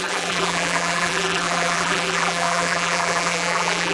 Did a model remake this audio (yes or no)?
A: yes